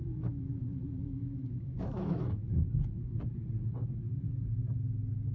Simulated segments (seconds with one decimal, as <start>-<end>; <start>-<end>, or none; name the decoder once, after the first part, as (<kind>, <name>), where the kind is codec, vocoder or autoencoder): 0.0-3.2 (autoencoder, DAC-VAE)